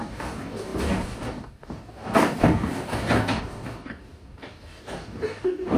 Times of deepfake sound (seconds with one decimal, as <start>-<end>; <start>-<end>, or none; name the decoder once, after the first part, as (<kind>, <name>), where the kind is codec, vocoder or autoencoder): 0.0-5.8 (codec, DAC)